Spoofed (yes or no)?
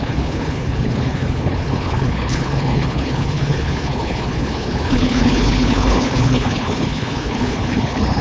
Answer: yes